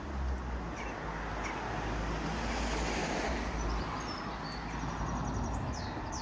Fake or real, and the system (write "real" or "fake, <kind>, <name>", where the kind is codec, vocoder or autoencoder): real